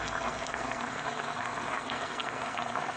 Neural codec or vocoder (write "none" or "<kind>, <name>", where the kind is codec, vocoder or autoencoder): codec, SNAC